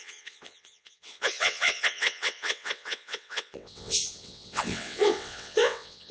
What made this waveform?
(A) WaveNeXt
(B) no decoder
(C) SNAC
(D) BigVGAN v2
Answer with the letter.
A